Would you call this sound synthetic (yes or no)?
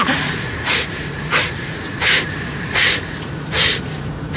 yes